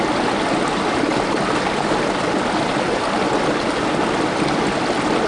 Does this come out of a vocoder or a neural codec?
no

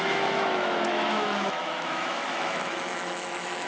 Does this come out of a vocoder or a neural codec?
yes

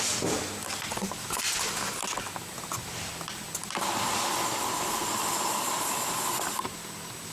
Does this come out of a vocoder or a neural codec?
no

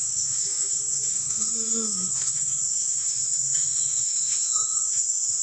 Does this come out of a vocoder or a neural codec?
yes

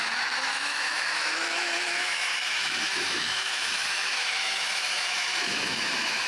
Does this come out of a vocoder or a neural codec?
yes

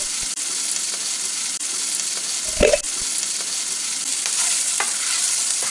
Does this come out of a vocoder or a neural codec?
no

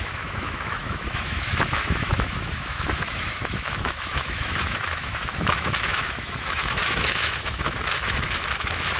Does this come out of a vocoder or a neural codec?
yes